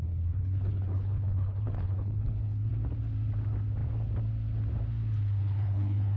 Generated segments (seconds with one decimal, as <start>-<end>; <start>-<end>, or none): 0.0-2.7; 5.4-6.2